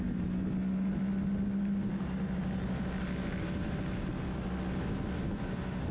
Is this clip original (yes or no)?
yes